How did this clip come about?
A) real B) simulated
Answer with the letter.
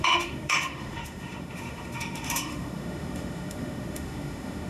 B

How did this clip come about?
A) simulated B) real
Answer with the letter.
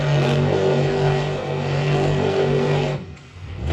A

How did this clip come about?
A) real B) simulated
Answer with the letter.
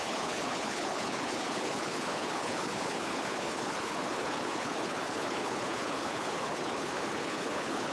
B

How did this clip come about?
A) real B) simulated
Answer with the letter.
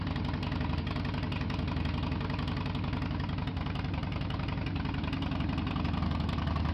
A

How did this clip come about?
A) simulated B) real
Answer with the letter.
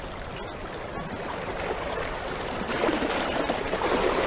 B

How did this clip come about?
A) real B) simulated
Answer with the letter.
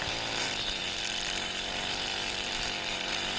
A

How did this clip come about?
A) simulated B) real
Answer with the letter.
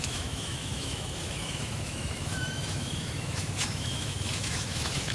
A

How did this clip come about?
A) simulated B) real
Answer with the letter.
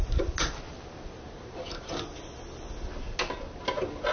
B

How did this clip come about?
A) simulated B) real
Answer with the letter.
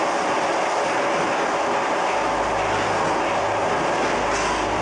B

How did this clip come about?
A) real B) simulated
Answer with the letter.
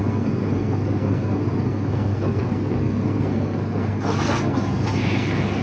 B